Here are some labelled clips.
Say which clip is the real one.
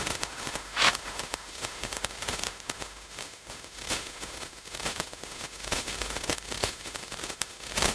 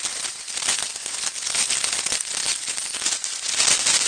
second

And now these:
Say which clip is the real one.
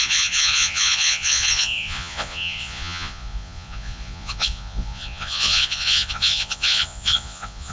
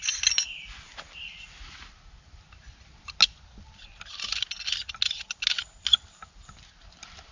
second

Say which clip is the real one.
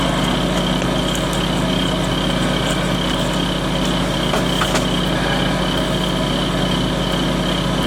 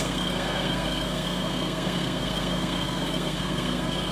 first